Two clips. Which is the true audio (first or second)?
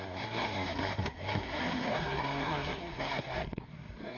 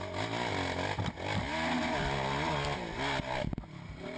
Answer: second